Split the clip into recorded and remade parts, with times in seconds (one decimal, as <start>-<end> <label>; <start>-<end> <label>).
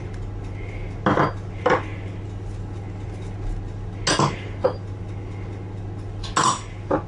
0.0-7.1 recorded